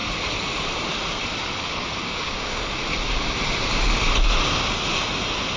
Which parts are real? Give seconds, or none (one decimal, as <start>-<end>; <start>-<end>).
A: 0.0-2.0; 2.6-5.6